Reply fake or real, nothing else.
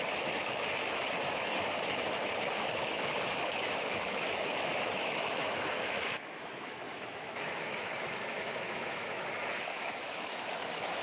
fake